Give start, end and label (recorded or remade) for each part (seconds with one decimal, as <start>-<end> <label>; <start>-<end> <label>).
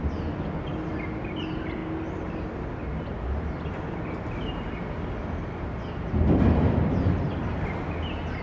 0.0-8.4 recorded